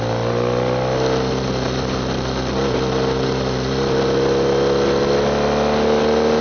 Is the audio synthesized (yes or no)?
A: no